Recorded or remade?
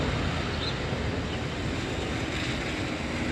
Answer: recorded